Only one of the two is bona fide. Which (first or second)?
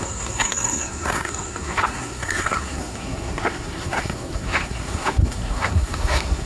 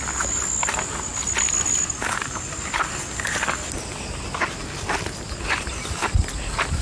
second